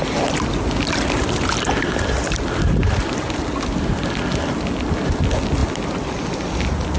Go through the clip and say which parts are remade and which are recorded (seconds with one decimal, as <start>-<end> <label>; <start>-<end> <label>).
0.0-7.0 recorded